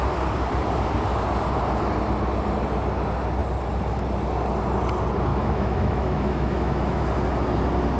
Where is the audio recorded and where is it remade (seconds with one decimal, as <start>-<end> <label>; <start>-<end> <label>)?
0.0-5.3 recorded; 5.3-7.0 remade; 7.0-8.0 recorded